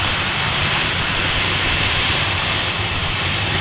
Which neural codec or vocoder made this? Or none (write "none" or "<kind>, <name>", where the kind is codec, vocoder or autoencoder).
vocoder, BigVGAN v2